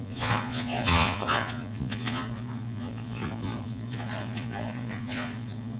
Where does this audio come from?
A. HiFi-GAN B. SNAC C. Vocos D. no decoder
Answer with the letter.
C